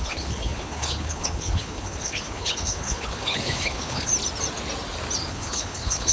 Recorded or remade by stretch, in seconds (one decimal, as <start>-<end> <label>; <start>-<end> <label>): 0.0-4.1 remade; 4.1-5.3 recorded; 5.3-6.1 remade